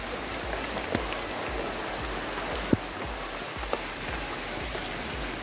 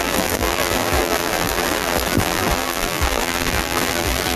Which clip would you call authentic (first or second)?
first